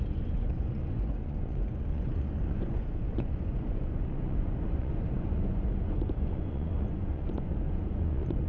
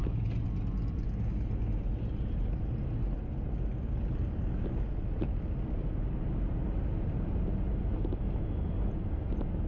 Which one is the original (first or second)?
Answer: second